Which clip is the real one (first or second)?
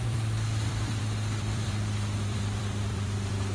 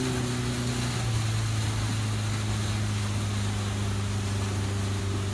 second